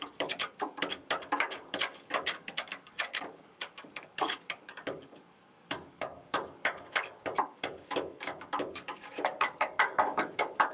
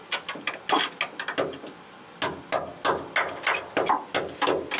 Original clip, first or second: second